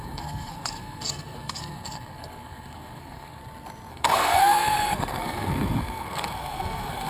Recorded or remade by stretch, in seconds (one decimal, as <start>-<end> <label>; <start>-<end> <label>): 0.0-3.4 remade; 3.4-3.9 recorded; 3.9-7.1 remade